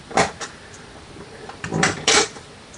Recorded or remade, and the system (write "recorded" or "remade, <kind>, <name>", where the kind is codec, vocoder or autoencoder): remade, vocoder, BigVGAN v2